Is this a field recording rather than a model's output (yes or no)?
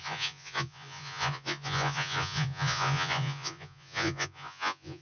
no